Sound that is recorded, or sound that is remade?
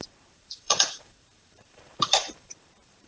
remade